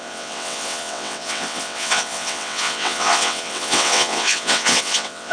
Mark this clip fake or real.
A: fake